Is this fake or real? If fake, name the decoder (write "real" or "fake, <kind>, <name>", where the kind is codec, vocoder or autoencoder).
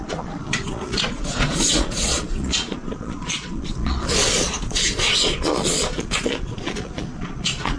fake, vocoder, Vocos